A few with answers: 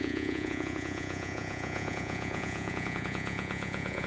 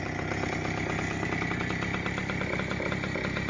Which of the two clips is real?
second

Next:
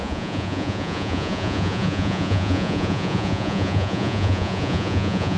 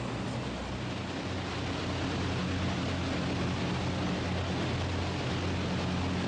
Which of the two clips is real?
second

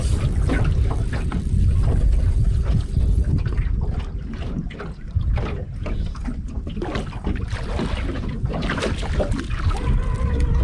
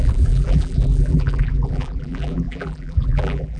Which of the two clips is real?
first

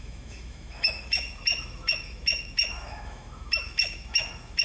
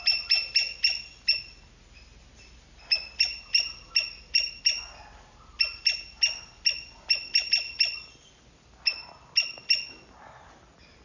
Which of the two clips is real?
second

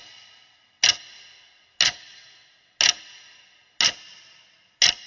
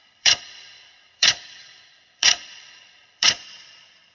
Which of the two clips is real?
first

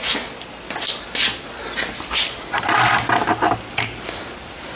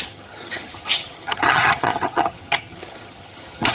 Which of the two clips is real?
first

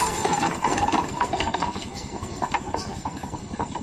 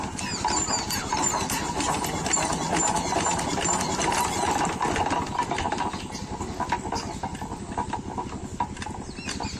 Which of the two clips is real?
second